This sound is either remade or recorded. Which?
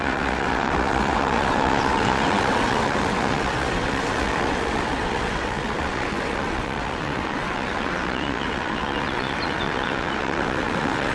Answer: remade